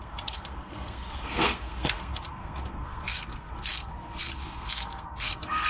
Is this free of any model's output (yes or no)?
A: no